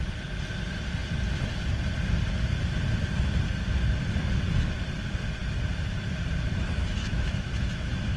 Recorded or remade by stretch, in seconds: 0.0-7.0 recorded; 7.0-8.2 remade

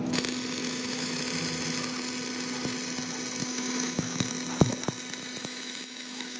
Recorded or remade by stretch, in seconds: 0.0-0.6 recorded; 0.6-1.2 remade; 1.2-3.4 recorded; 3.4-4.3 remade; 4.3-5.4 recorded; 5.4-6.4 remade

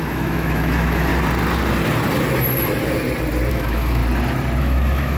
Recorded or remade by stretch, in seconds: 0.0-1.1 remade; 1.1-3.5 recorded; 3.5-4.0 remade; 4.0-4.6 recorded; 4.6-5.2 remade

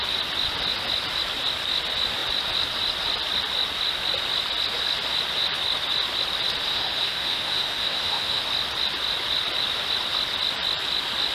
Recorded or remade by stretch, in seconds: 0.0-6.7 recorded; 6.7-8.4 remade; 8.4-11.3 recorded

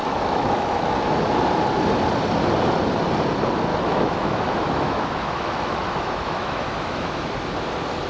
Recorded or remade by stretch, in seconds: 0.0-1.4 remade; 1.4-3.7 recorded; 3.7-7.3 remade; 7.3-8.1 recorded

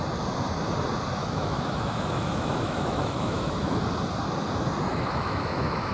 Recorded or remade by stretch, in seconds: 0.0-1.2 recorded; 1.2-3.8 remade; 3.8-4.9 recorded; 4.9-5.9 remade

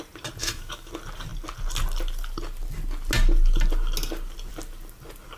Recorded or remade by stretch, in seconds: 0.0-0.4 recorded; 0.4-0.9 remade; 0.9-5.4 recorded